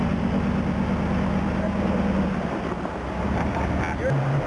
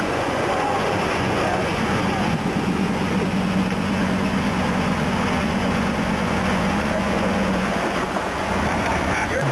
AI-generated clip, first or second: second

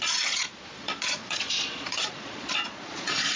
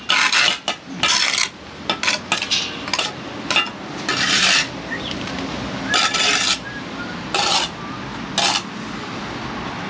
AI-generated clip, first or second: first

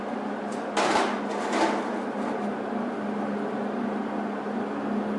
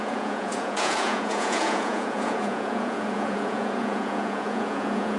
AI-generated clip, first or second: second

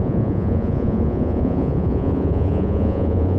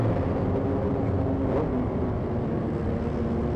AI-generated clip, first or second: first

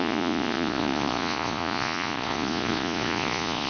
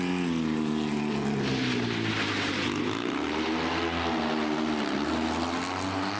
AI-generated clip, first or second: first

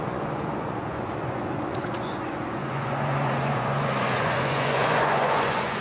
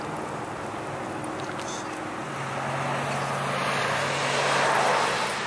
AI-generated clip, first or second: first